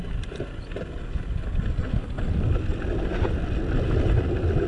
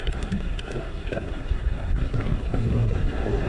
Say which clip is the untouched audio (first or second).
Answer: first